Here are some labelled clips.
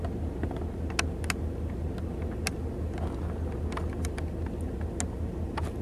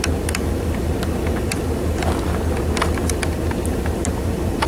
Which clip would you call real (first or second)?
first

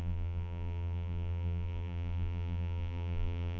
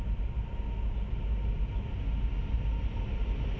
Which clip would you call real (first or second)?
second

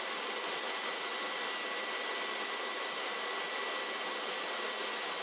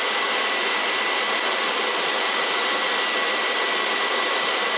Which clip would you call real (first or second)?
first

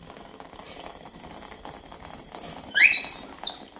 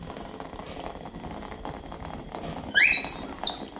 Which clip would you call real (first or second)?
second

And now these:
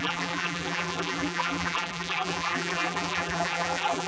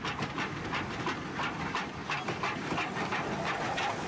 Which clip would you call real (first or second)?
second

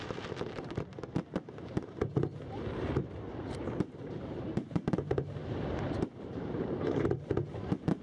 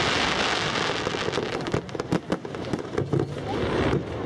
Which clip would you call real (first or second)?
second